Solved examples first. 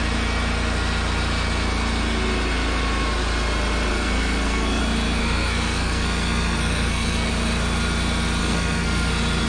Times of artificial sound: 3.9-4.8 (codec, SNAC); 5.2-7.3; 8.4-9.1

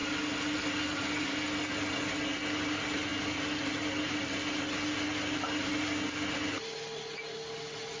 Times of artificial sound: none

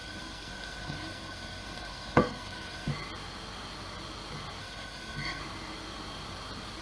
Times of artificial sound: 0.0-2.9 (codec, SNAC); 4.6-5.4

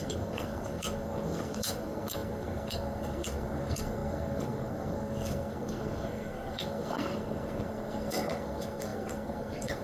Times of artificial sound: 0.0-9.8 (codec, SNAC)

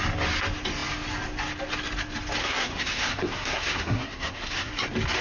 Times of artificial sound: 2.4-4.7 (codec, SNAC)